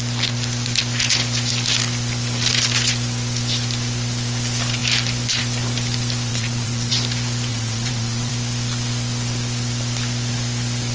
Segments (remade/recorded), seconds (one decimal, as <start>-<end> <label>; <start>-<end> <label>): 0.0-6.3 recorded; 6.3-6.9 remade; 6.9-7.5 recorded; 7.5-8.3 remade; 8.3-10.9 recorded